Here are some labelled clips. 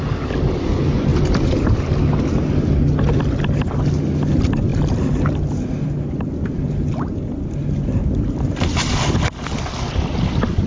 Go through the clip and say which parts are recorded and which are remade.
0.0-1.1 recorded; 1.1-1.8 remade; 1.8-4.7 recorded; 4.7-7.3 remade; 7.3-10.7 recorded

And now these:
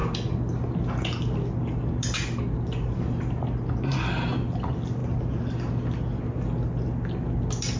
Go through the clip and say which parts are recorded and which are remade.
0.0-7.8 recorded

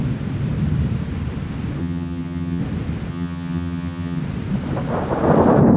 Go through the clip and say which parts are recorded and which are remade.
0.0-1.8 recorded; 1.8-2.6 remade; 2.6-3.1 recorded; 3.1-4.2 remade; 4.2-5.8 recorded

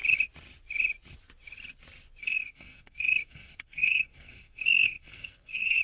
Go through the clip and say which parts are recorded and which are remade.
0.0-2.2 recorded; 2.2-5.8 remade

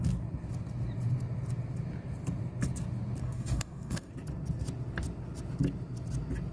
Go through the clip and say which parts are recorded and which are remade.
0.0-3.2 recorded; 3.2-4.1 remade; 4.1-6.5 recorded

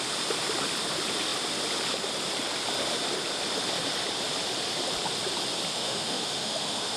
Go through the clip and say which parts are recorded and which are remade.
0.0-5.7 recorded; 5.7-7.0 remade